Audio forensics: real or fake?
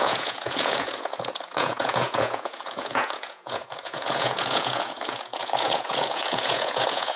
fake